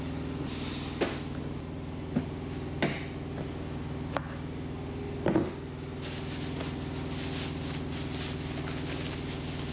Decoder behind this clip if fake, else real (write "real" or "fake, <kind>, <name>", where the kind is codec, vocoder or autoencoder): real